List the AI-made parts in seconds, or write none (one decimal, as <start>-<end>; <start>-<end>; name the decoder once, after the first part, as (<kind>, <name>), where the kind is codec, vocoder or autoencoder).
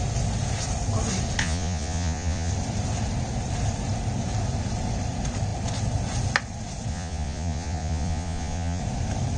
1.4-2.5 (vocoder, Vocos); 6.9-8.8